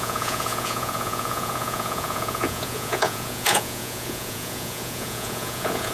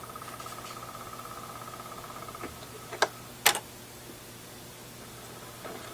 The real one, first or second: second